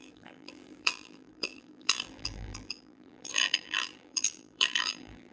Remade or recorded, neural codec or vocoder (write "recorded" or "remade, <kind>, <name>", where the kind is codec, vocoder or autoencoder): remade, vocoder, BigVGAN v2